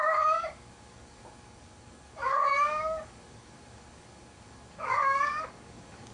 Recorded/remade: remade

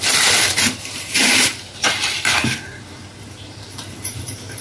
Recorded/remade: remade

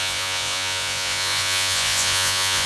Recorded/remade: remade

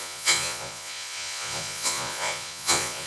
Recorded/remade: remade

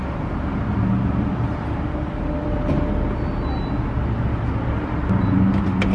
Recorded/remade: recorded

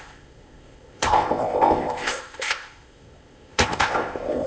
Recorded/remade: remade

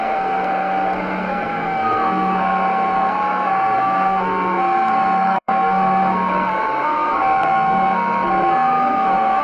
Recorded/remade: remade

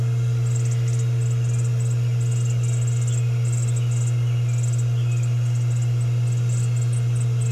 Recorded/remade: recorded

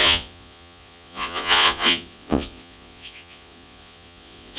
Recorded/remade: remade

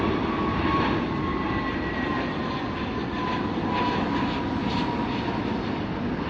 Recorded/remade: recorded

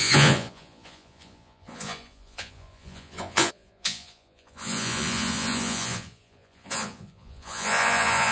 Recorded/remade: remade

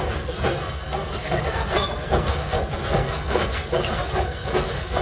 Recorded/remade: remade